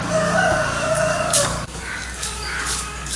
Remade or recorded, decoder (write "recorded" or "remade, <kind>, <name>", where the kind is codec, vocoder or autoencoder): remade, codec, DAC